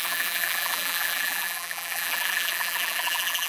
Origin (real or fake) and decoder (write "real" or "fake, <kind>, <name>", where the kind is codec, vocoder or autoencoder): fake, vocoder, BigVGAN v2